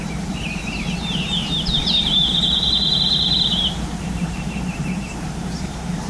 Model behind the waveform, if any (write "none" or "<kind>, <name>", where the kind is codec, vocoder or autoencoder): vocoder, BigVGAN v2